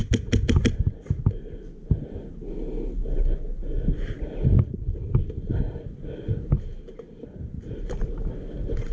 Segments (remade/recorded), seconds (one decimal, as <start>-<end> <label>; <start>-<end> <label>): 0.0-8.9 recorded

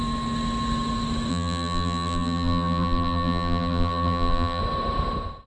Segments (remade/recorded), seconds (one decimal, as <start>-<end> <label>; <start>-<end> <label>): 0.0-1.3 recorded; 1.3-4.6 remade; 4.6-5.5 recorded

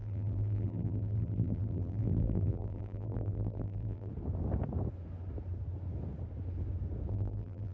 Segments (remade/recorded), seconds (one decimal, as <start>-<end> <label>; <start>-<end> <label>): 0.0-4.1 remade; 4.1-7.1 recorded; 7.1-7.7 remade

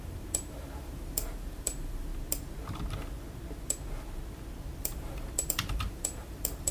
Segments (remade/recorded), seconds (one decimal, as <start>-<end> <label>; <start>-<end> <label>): 0.0-2.1 remade; 2.1-4.8 recorded; 4.8-6.7 remade

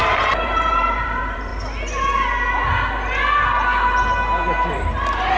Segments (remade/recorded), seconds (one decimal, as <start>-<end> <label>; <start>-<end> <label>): 0.0-1.5 remade; 1.5-4.7 recorded; 4.7-5.4 remade

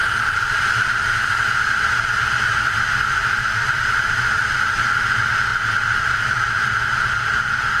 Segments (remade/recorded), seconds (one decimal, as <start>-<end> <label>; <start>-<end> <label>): 0.0-3.2 recorded; 3.2-4.8 remade; 4.8-7.8 recorded

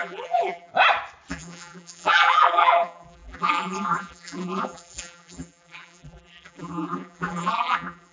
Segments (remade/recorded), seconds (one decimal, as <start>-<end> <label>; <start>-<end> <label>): 0.0-0.7 remade; 0.7-1.3 recorded; 1.3-8.1 remade

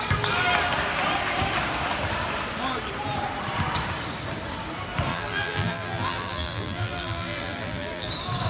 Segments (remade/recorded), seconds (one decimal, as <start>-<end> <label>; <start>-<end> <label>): 0.0-5.1 recorded; 5.1-8.1 remade; 8.1-8.5 recorded